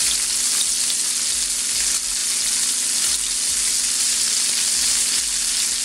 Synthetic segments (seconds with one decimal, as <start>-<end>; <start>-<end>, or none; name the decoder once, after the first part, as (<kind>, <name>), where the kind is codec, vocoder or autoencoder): none